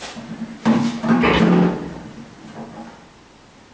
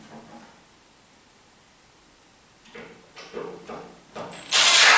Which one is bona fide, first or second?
first